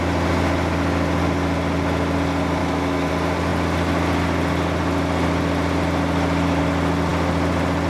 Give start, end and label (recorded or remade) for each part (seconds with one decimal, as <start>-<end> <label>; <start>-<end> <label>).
0.0-2.6 recorded; 2.6-3.1 remade; 3.1-7.9 recorded